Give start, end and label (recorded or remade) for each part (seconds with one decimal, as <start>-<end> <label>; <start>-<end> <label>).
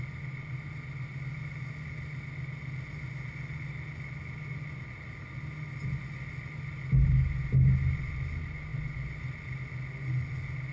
0.0-10.7 recorded